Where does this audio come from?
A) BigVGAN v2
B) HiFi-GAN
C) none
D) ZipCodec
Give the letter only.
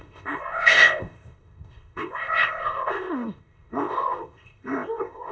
D